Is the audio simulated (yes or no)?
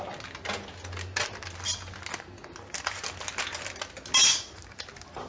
no